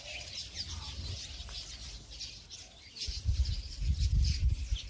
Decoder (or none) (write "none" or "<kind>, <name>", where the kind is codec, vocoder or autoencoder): none